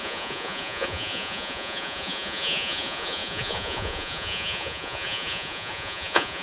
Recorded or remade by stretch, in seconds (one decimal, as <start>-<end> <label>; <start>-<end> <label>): 0.0-6.4 remade